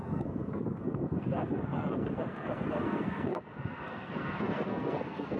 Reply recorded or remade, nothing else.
remade